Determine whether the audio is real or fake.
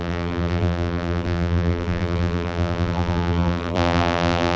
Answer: fake